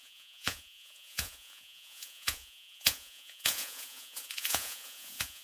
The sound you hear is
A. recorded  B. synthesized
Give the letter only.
B